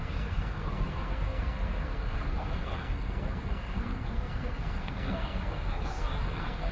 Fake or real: fake